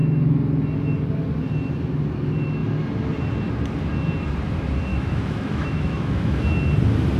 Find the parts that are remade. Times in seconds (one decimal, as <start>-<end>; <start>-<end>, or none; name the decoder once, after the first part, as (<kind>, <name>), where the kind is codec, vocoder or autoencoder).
4.9-6.4 (autoencoder, DAC-VAE)